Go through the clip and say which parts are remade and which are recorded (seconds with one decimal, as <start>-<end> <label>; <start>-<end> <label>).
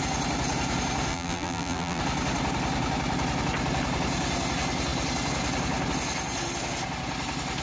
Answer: 0.0-1.1 recorded; 1.1-2.0 remade; 2.0-7.6 recorded